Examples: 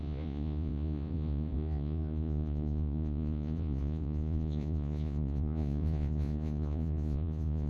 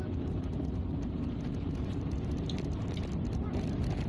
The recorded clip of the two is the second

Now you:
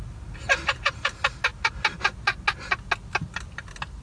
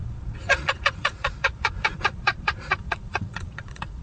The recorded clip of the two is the first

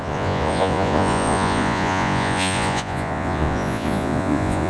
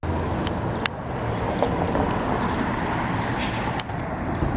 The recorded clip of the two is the second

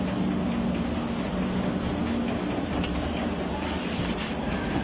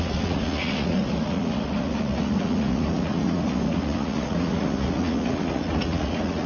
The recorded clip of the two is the first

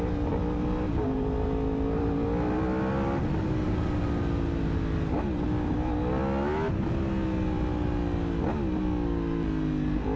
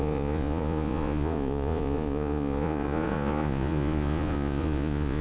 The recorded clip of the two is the first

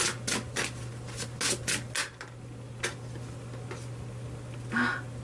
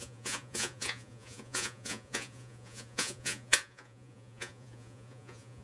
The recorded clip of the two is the first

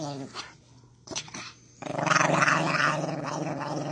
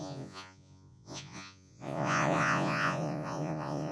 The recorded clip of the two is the first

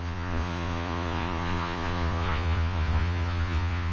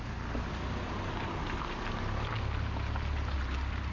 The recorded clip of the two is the second